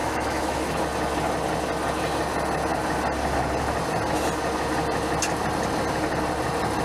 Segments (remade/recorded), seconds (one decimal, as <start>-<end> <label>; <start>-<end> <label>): 0.0-0.8 remade; 0.8-6.8 recorded